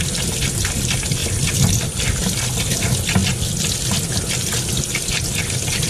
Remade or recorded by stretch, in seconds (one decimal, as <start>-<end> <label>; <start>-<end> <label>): 0.0-5.9 recorded